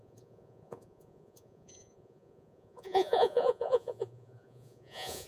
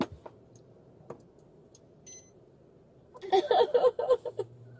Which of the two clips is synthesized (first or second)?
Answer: first